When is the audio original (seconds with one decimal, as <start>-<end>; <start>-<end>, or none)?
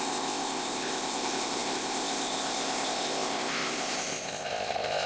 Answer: none